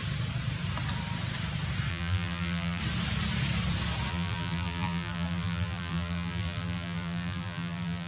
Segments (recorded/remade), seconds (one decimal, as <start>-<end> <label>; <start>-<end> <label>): 0.0-1.9 recorded; 1.9-2.8 remade; 2.8-4.1 recorded; 4.1-8.1 remade